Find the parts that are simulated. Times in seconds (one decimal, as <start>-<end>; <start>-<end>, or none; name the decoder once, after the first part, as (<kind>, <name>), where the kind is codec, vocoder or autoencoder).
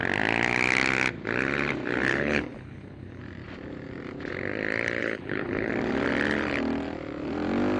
2.1-3.2 (codec, HILCodec); 5.0-5.7